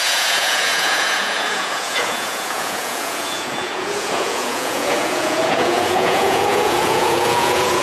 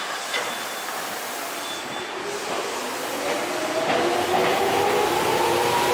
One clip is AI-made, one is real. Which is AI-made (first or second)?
first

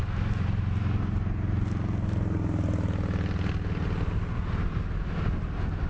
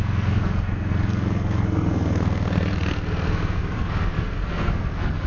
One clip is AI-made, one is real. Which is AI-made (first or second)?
second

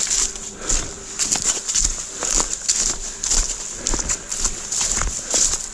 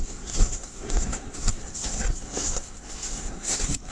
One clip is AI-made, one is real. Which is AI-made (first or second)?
second